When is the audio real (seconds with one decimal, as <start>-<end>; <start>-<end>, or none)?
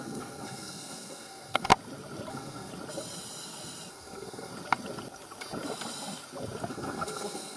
1.7-2.3; 2.7-3.9; 4.5-6.7